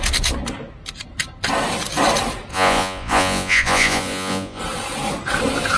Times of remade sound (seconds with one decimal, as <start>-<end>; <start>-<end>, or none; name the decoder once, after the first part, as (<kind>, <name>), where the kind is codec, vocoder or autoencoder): 2.5-4.6 (vocoder, Vocos)

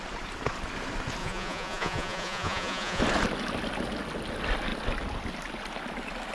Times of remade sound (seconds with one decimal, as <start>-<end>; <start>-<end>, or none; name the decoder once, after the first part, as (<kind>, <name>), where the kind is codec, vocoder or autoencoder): 1.2-3.0 (vocoder, Vocos)

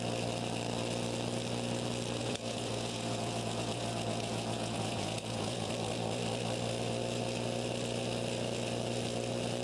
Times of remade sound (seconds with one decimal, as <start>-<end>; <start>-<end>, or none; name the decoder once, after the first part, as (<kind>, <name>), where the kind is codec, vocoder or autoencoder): 2.2-5.7 (vocoder, Vocos)